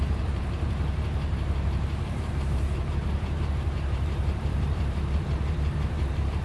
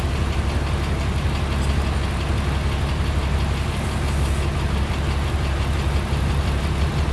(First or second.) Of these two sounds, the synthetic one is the first